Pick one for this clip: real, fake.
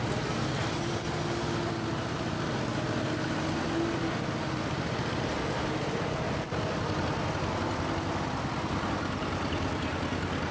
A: real